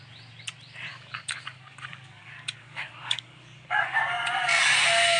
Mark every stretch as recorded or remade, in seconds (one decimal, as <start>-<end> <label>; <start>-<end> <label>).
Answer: 0.0-0.9 recorded; 0.9-4.0 remade; 4.0-5.2 recorded